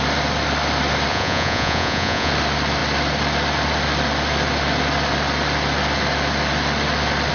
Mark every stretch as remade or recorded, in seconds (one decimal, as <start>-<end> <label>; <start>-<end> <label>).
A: 0.0-1.1 recorded; 1.1-2.3 remade; 2.3-7.3 recorded